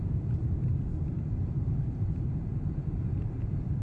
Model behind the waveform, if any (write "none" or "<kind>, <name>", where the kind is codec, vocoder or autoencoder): vocoder, BigVGAN v2